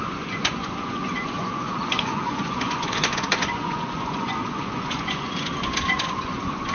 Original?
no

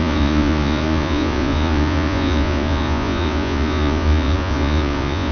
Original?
no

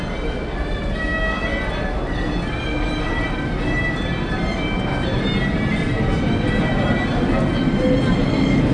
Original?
yes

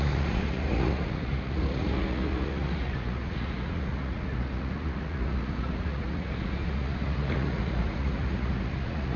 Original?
no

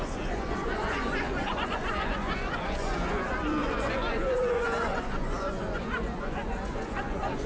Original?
no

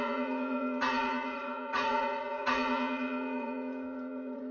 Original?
no